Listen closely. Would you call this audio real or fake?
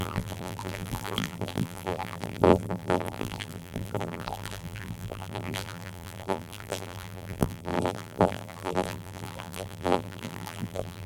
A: fake